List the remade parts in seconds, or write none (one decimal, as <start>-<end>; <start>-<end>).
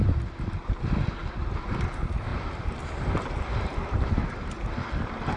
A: none